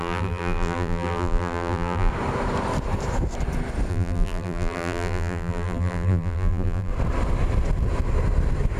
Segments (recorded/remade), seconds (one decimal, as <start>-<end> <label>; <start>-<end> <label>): 0.0-2.1 remade; 2.1-3.9 recorded; 3.9-6.9 remade; 6.9-8.8 recorded